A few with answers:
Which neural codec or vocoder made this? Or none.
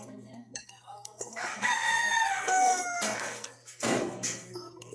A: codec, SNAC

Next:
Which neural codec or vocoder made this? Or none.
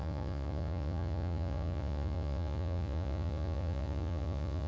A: vocoder, Vocos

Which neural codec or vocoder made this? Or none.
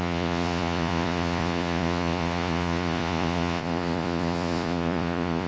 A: vocoder, Vocos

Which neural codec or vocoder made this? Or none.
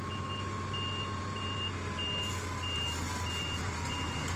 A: none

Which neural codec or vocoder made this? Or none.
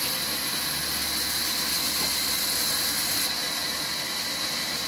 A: none